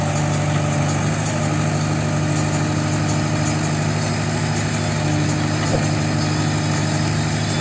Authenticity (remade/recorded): recorded